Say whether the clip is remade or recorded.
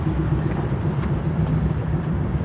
recorded